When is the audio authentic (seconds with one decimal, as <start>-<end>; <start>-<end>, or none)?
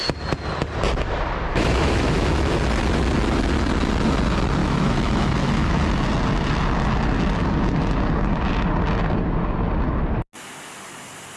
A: 0.0-1.5; 2.5-4.6; 5.8-11.4